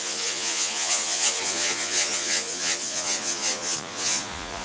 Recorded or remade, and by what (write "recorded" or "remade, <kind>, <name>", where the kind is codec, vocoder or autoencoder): remade, vocoder, Vocos